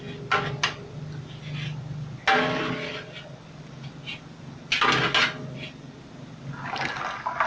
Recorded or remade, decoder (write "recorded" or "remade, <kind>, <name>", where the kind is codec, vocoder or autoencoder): recorded